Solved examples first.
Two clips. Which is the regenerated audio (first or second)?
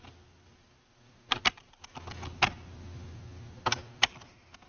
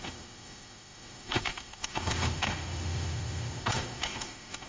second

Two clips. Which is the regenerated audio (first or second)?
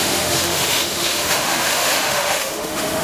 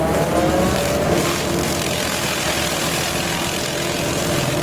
first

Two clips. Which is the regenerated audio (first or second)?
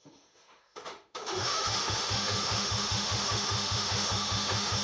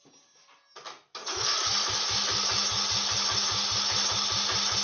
first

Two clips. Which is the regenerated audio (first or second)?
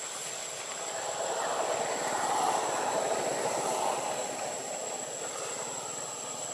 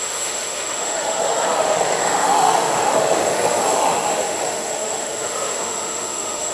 second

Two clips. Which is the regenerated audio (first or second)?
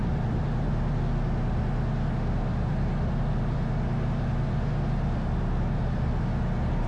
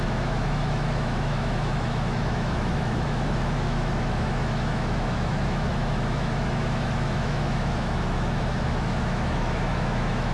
second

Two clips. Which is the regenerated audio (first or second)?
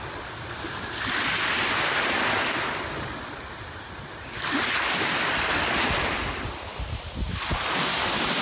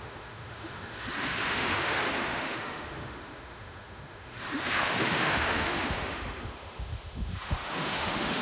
second